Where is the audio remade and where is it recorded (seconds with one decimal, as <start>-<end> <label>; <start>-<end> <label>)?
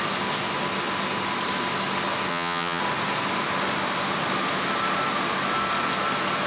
0.0-2.3 recorded; 2.3-2.8 remade; 2.8-6.5 recorded